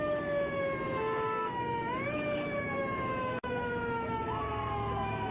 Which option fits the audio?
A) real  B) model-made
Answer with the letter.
B